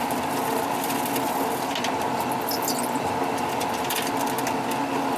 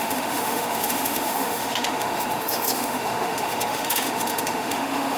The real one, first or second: first